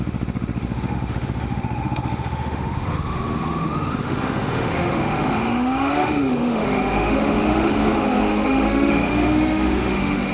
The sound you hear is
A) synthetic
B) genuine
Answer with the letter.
A